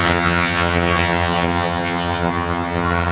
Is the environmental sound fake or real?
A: fake